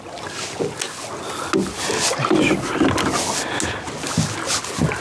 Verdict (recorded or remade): recorded